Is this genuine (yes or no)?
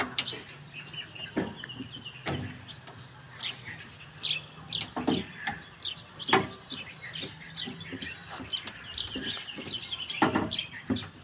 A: yes